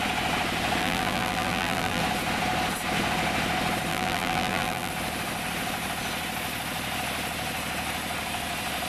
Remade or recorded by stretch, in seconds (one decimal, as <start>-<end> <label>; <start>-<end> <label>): 0.0-0.8 recorded; 0.8-2.0 remade; 2.0-3.9 recorded; 3.9-4.9 remade; 4.9-8.9 recorded